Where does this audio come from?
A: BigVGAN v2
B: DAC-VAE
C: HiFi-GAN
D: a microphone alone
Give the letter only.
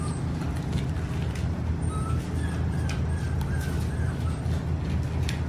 D